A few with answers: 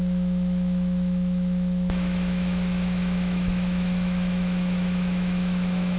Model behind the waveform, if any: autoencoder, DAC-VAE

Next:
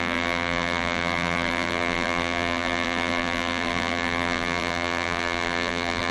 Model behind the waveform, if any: vocoder, BigVGAN v2